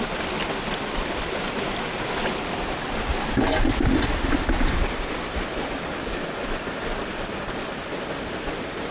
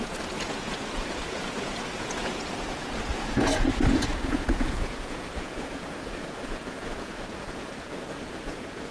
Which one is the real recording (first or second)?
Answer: first